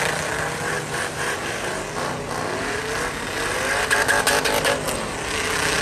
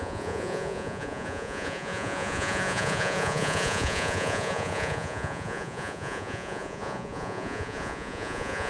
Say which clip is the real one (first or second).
first